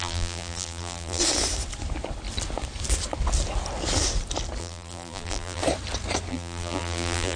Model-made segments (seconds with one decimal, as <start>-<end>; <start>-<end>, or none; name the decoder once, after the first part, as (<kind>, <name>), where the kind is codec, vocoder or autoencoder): 0.0-1.2 (vocoder, BigVGAN v2); 4.6-5.6; 6.3-7.4